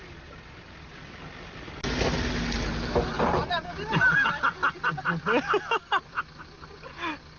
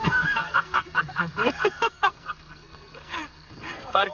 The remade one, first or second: second